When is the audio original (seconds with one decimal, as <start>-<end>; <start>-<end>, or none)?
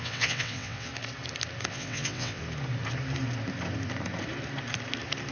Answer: 0.9-1.7; 2.4-5.3